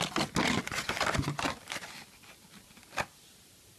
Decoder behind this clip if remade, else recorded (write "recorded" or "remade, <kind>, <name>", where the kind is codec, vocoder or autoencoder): recorded